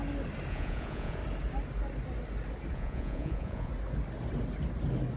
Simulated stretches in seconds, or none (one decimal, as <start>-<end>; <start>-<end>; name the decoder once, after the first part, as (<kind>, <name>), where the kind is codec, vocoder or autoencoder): 0.5-1.2 (vocoder, Vocos); 2.7-3.7